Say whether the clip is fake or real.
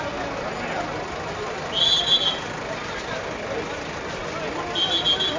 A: real